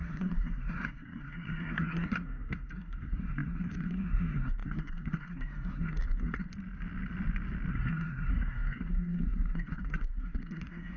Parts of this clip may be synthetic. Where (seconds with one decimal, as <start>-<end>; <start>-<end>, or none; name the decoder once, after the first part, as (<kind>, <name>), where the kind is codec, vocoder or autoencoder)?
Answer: 0.0-6.5 (codec, SNAC); 7.7-11.0

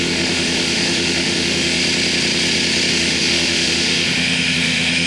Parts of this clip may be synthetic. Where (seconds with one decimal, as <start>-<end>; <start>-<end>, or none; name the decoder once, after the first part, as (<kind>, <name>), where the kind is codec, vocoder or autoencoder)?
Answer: 0.0-1.8 (autoencoder, DAC-VAE); 2.9-5.1

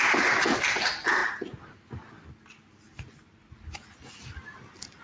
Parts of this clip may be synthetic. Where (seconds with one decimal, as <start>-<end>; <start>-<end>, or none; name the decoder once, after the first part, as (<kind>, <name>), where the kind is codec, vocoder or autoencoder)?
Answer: none

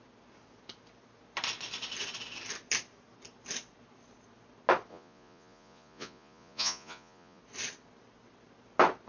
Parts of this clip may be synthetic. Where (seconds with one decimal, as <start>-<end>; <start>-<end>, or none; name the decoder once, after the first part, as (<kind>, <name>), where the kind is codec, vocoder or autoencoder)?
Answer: 4.9-7.4 (vocoder, Vocos)